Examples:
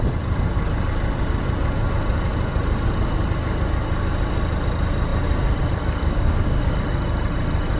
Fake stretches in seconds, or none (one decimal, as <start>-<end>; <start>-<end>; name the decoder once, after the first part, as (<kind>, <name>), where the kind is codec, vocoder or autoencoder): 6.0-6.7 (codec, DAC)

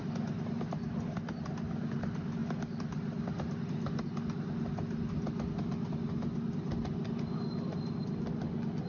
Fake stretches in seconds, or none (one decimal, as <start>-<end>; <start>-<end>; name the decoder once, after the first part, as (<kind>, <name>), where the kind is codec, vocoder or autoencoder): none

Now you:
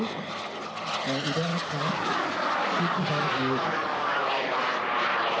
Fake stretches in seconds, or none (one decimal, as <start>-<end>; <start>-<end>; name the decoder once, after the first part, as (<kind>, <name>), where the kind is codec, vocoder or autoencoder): 1.5-4.7 (codec, DAC)

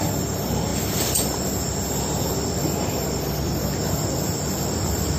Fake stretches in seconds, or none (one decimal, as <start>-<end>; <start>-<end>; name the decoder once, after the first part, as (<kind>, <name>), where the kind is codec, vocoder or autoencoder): none